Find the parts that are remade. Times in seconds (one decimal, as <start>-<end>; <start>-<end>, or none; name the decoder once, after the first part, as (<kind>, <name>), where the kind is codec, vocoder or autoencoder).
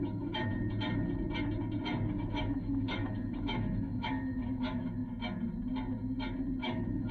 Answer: 0.0-0.5 (autoencoder, DAC-VAE); 2.1-5.0; 6.6-7.1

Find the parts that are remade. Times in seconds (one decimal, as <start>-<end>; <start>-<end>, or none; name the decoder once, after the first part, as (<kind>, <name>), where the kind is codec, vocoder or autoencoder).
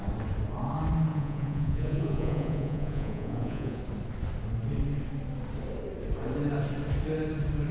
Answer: 1.1-3.8 (vocoder, Vocos)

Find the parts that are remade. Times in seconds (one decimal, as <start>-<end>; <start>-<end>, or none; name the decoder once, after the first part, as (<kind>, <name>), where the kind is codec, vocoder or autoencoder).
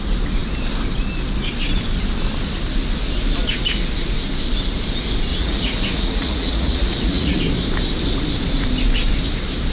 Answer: 5.3-7.4 (vocoder, Vocos)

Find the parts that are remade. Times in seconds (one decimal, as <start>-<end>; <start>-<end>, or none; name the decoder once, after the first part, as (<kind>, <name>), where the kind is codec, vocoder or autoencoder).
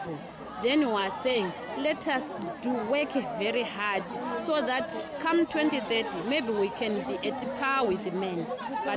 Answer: 1.0-1.6 (vocoder, Vocos)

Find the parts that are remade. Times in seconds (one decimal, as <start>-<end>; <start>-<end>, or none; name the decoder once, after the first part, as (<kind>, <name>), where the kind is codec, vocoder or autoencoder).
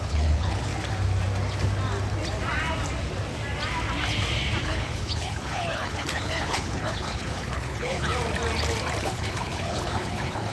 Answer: 0.0-0.7 (codec, HILCodec); 4.6-8.1; 9.0-10.5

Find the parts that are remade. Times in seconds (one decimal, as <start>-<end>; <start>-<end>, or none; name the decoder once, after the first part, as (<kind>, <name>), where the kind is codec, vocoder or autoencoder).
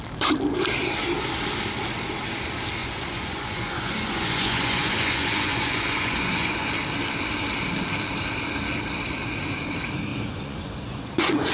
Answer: 2.8-6.7 (vocoder, Vocos); 10.1-11.5